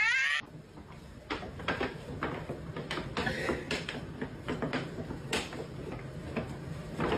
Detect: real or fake fake